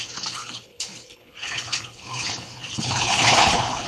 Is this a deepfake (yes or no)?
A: yes